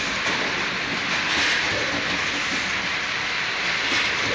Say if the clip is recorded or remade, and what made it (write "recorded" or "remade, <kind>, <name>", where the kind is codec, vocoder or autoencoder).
recorded